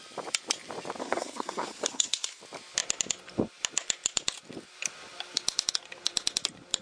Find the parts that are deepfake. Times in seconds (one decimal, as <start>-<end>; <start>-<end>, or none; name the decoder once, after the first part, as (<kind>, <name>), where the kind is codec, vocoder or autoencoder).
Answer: 1.0-2.4 (codec, SNAC)